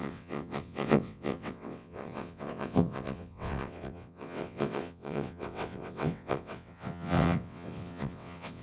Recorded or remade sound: remade